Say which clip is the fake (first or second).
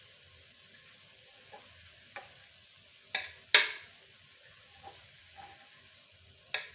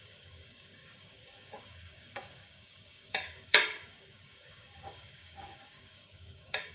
second